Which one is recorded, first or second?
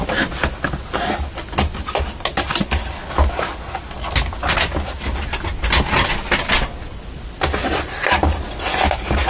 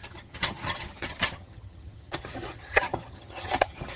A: first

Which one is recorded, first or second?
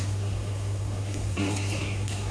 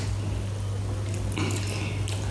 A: second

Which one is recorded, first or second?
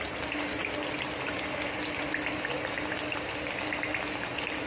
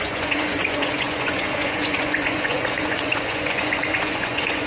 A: first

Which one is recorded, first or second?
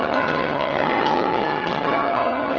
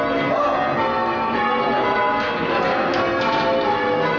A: second